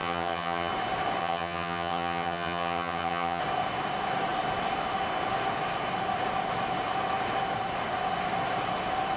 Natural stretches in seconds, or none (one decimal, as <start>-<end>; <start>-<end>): 0.7-1.2; 3.4-9.2